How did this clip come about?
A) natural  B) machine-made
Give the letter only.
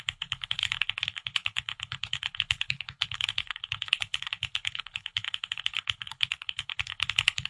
B